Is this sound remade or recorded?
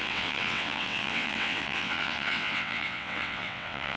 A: remade